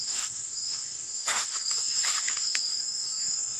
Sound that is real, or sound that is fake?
fake